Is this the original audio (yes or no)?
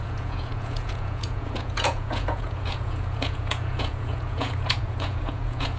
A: no